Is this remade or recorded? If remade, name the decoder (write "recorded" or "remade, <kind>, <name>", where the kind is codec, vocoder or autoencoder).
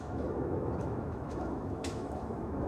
remade, autoencoder, DAC-VAE